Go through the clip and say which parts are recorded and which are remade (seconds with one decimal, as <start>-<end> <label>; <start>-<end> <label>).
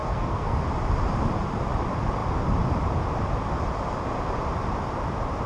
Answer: 0.0-0.6 remade; 0.6-5.5 recorded